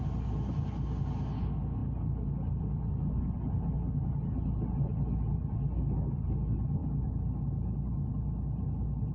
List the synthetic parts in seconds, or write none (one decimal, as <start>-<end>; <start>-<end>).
1.8-3.5